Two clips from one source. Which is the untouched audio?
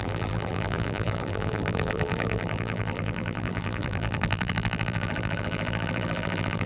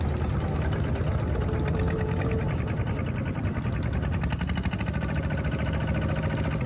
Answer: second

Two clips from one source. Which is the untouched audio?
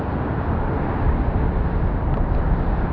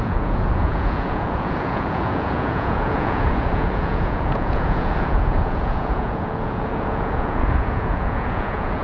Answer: first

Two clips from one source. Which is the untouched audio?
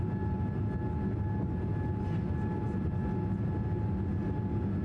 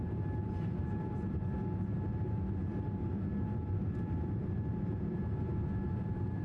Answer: first